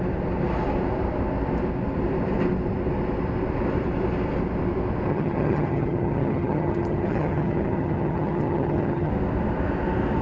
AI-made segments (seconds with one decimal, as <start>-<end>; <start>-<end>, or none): 5.1-9.1